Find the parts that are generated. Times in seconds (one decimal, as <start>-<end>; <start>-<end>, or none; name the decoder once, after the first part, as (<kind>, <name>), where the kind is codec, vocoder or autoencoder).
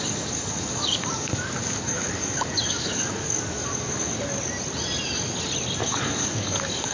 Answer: 0.0-4.1 (codec, DAC); 5.8-6.9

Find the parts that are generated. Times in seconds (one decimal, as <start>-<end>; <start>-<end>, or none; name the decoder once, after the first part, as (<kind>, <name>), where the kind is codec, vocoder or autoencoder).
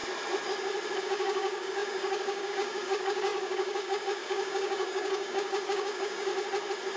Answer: 1.0-6.3 (codec, DAC)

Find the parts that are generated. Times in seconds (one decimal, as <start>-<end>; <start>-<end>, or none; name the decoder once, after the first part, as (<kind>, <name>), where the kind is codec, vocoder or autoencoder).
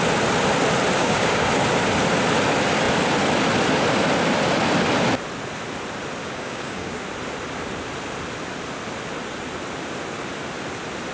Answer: 1.0-1.5 (codec, DAC); 6.2-7.0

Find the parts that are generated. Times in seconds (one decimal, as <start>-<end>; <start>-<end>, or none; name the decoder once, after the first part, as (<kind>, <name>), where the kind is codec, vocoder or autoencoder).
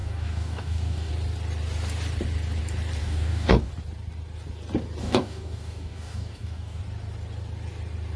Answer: 0.0-1.1 (codec, DAC); 3.0-3.7; 5.0-6.8